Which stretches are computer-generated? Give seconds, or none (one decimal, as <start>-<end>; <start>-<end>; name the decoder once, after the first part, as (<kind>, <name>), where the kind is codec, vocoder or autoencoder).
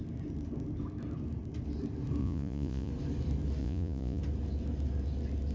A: 2.2-2.9 (vocoder, Vocos); 3.6-4.2